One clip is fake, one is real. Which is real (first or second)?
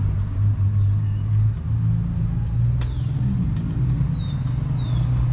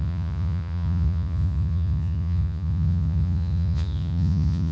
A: first